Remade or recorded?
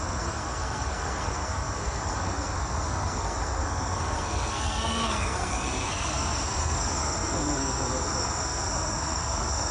remade